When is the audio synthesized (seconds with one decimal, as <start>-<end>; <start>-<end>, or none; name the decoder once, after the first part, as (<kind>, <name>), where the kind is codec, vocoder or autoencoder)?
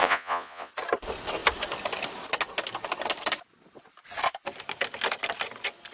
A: 0.0-0.7 (vocoder, Vocos)